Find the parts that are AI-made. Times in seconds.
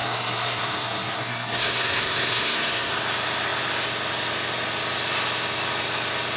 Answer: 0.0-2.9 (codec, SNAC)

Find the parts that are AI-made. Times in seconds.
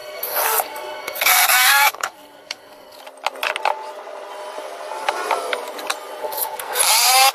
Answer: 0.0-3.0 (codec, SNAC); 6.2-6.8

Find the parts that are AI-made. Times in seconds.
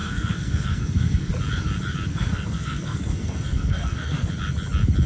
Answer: 0.0-1.3 (codec, SNAC); 2.1-4.3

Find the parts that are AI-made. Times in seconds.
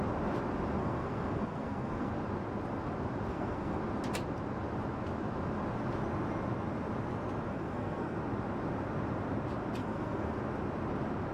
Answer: 0.8-2.1 (codec, SNAC); 3.3-3.8; 7.5-8.2; 9.8-10.4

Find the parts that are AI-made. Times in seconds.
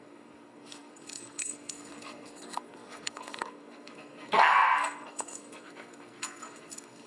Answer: 0.0-7.1 (codec, SNAC)